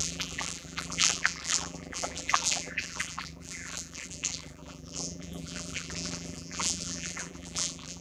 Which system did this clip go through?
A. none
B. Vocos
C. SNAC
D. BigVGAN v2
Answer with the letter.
D